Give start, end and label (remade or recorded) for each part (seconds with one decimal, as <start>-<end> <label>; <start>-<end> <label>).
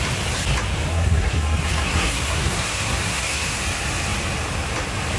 0.0-0.9 recorded; 0.9-3.6 remade; 3.6-5.2 recorded